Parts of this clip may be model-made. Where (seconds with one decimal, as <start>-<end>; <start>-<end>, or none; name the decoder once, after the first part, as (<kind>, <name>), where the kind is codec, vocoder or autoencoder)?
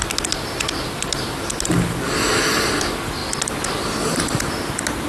3.2-5.1 (vocoder, BigVGAN v2)